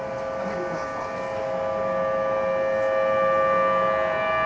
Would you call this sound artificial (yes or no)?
no